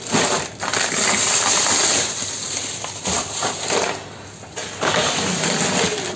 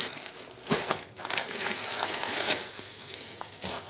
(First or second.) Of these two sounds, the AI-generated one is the second